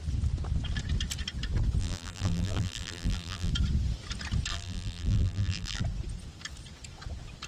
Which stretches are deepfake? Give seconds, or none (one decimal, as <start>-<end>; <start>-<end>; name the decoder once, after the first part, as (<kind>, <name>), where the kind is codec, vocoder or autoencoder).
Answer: 1.8-3.5 (vocoder, BigVGAN v2); 4.5-5.8